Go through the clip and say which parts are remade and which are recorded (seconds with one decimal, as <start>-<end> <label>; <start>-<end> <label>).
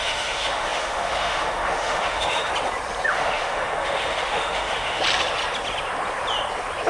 0.0-2.5 remade; 2.5-3.1 recorded; 3.1-5.0 remade; 5.0-6.9 recorded